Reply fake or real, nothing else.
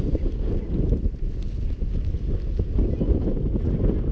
real